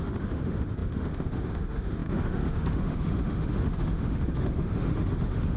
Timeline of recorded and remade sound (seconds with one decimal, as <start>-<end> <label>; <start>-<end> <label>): 0.0-5.6 remade